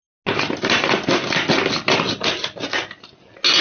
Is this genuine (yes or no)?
yes